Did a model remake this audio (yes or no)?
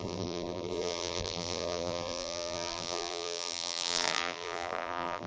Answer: yes